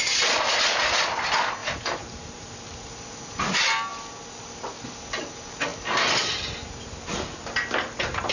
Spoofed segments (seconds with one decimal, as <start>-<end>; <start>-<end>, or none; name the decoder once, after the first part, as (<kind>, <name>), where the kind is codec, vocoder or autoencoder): 1.6-2.6 (vocoder, BigVGAN v2)